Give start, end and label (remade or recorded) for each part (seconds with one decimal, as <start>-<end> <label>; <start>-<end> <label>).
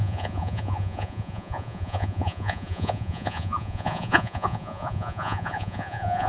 0.0-6.3 remade